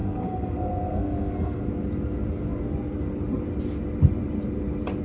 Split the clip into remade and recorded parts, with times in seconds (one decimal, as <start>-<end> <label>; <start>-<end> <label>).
0.0-1.6 remade; 1.6-5.0 recorded